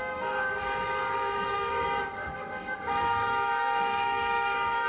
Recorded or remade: remade